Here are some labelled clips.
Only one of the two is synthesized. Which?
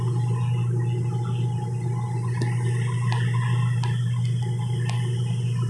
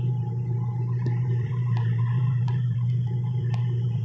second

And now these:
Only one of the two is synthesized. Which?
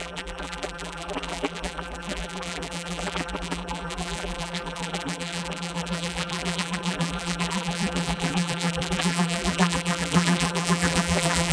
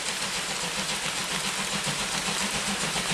first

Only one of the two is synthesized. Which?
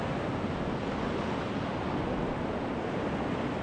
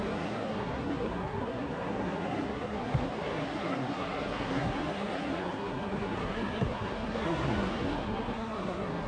second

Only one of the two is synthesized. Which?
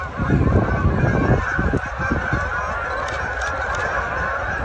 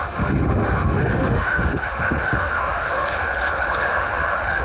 second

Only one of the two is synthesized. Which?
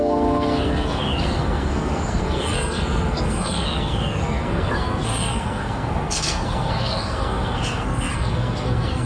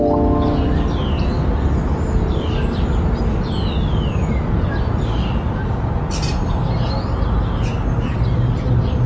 first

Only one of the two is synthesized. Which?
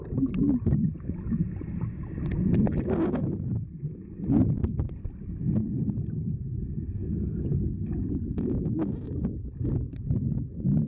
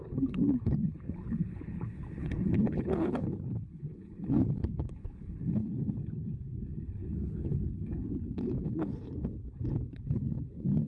second